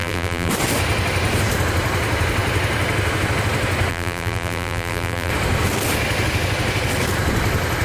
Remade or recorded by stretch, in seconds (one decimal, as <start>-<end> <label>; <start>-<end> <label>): 0.0-0.5 remade; 0.5-3.9 recorded; 3.9-5.3 remade; 5.3-7.8 recorded